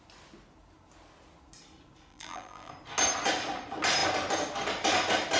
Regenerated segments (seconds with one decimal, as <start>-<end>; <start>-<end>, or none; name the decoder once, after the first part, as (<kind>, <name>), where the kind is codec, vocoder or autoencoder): 2.1-2.7 (vocoder, BigVGAN v2)